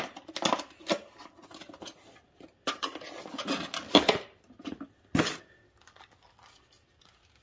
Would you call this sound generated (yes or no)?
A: no